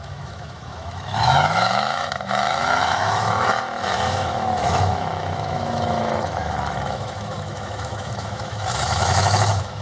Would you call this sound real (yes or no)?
no